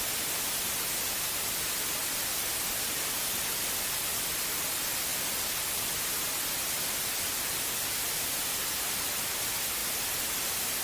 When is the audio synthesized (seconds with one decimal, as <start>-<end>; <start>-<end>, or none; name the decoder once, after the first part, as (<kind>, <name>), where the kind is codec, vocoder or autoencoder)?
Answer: 5.1-6.0 (vocoder, BigVGAN v2); 9.8-10.8